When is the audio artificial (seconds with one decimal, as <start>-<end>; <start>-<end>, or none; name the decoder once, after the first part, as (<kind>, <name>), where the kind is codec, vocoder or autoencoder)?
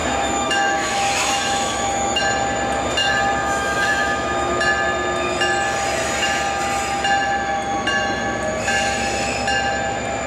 0.0-2.2 (autoencoder, DAC-VAE); 3.0-4.5